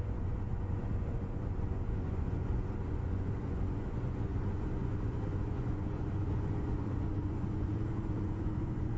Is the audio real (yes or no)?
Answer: no